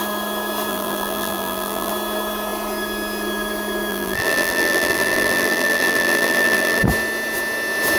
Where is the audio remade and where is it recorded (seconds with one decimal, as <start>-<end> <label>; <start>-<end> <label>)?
0.0-0.7 recorded; 0.7-1.9 remade; 1.9-3.9 recorded; 3.9-6.8 remade; 6.8-8.0 recorded